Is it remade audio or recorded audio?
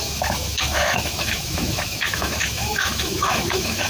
remade